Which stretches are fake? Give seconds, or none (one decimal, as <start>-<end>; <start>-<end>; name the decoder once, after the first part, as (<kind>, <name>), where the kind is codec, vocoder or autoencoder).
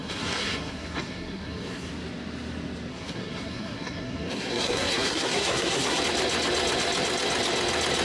0.0-1.9 (codec, SNAC); 2.9-6.0